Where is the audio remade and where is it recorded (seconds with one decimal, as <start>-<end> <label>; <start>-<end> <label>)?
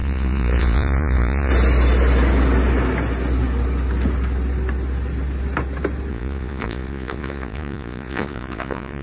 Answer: 0.0-1.5 remade; 1.5-6.1 recorded; 6.1-9.0 remade